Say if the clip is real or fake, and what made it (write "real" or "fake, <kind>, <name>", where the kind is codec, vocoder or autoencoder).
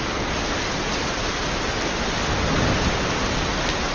real